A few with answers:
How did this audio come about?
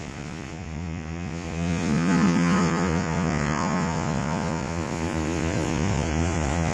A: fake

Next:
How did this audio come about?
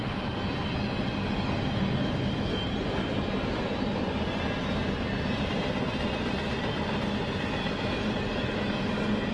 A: real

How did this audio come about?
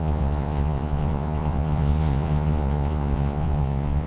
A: fake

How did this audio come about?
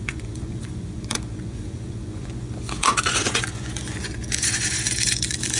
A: fake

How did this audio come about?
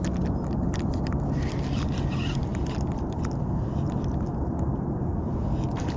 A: real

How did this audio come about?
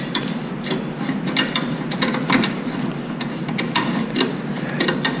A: real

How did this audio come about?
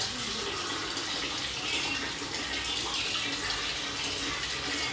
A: real